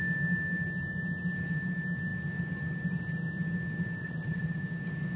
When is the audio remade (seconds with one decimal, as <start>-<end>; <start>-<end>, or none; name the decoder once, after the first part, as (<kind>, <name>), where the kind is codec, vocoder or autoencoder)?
4.0-4.6 (vocoder, Vocos)